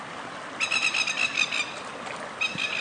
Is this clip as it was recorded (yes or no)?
yes